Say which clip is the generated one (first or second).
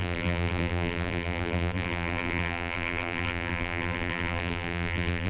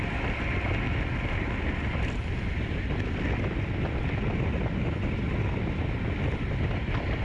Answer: first